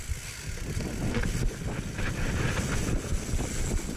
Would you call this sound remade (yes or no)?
no